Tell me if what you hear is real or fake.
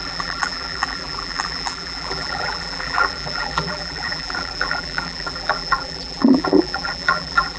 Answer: fake